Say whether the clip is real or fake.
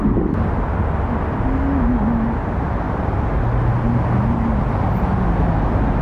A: real